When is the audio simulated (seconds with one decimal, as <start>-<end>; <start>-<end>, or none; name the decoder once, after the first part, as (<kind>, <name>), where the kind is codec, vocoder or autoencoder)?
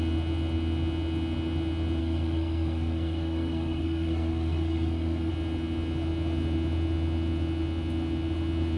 2.0-5.3 (codec, SNAC)